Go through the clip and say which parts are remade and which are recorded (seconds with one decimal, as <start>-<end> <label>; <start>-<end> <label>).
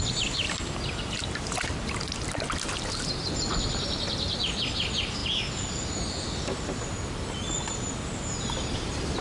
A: 0.0-9.2 recorded